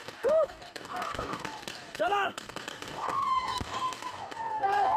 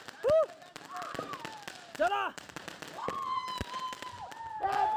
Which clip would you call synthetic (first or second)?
first